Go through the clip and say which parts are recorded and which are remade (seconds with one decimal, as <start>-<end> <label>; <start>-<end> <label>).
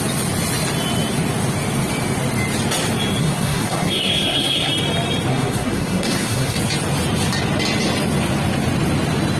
0.0-3.2 recorded; 3.2-4.7 remade; 4.7-5.3 recorded; 5.3-6.6 remade; 6.6-9.4 recorded